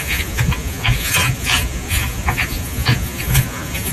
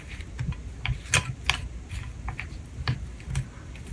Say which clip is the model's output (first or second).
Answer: first